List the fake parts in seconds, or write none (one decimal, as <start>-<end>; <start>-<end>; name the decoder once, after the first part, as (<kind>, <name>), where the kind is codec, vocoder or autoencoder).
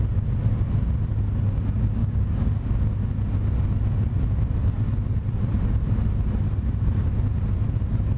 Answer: 2.0-2.7 (codec, DAC)